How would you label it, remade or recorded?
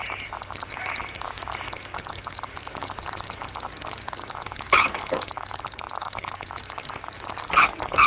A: remade